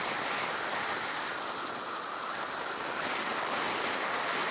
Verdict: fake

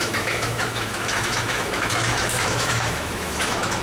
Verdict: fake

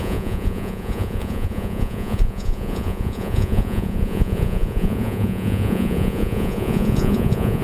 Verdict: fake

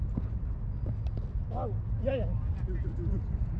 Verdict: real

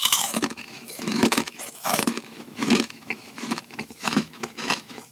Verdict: fake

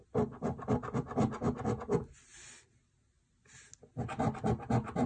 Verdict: real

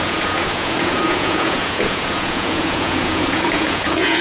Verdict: fake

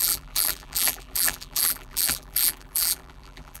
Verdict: fake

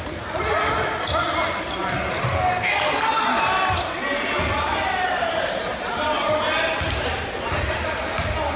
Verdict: real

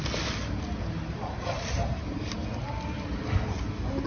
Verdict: real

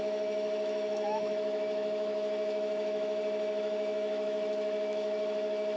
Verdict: fake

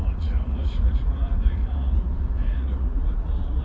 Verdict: fake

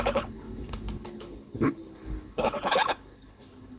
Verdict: fake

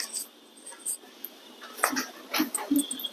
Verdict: real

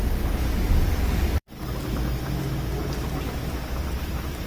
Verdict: fake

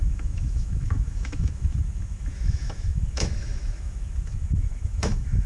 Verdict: fake